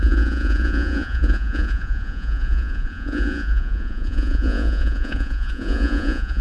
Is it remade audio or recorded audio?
remade